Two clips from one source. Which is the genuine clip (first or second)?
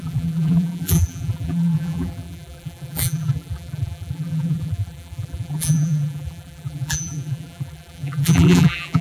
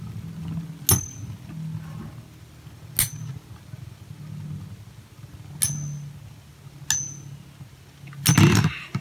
second